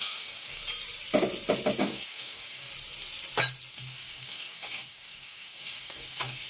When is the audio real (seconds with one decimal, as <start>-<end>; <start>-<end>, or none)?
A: 0.6-1.8; 2.7-3.7